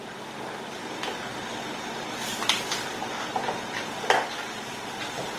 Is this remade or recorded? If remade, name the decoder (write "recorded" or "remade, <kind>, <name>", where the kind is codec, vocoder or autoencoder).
remade, vocoder, BigVGAN v2